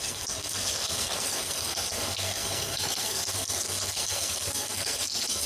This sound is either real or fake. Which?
fake